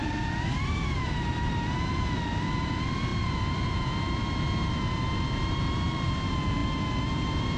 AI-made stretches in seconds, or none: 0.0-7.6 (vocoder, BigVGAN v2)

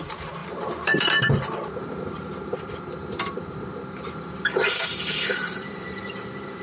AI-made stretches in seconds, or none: 0.0-6.6 (vocoder, BigVGAN v2)

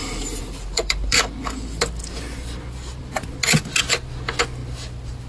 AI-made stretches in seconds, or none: 0.0-3.0 (vocoder, BigVGAN v2); 4.6-5.3

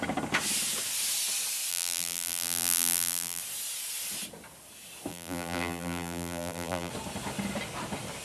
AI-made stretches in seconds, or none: 1.7-3.4 (vocoder, BigVGAN v2); 5.1-6.9